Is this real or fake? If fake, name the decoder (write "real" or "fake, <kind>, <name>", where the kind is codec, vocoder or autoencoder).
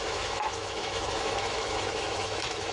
fake, autoencoder, DAC-VAE